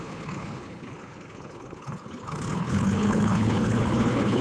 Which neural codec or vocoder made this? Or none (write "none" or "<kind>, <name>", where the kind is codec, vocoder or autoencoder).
codec, HILCodec